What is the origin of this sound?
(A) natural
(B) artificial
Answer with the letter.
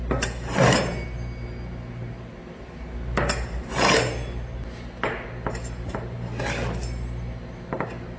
A